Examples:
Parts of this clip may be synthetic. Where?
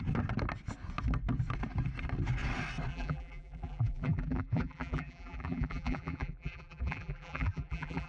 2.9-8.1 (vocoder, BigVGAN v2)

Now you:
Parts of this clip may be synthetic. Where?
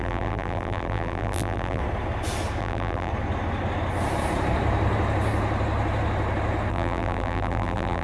0.0-1.8 (vocoder, BigVGAN v2); 2.6-3.1; 6.7-8.0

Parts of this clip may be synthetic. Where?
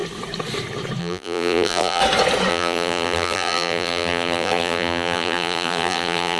1.0-2.0 (vocoder, BigVGAN v2); 2.5-6.4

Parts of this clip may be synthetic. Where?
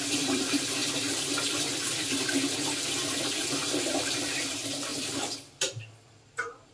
0.0-6.7 (vocoder, BigVGAN v2)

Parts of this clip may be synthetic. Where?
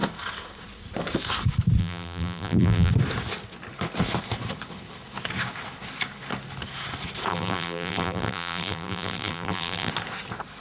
1.8-2.9 (vocoder, BigVGAN v2); 7.3-9.9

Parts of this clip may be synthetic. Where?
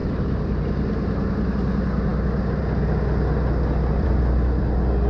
0.0-1.4 (vocoder, BigVGAN v2)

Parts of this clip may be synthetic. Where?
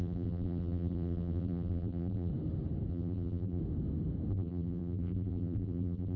0.0-2.3 (vocoder, BigVGAN v2); 2.9-3.6; 4.3-6.2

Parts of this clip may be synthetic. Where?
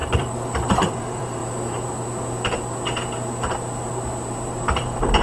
0.0-1.4 (vocoder, BigVGAN v2); 4.5-5.2